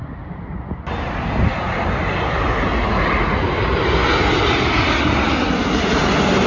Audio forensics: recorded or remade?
recorded